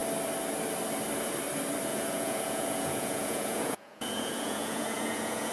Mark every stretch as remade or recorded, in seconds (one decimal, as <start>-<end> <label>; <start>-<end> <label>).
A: 0.0-1.9 recorded; 1.9-5.5 remade